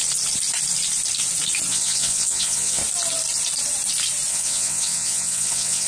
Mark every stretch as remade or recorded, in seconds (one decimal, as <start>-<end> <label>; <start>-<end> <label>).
0.0-1.7 recorded; 1.7-2.8 remade; 2.8-4.3 recorded; 4.3-5.9 remade